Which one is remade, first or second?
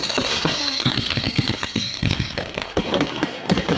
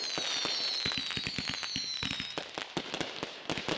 first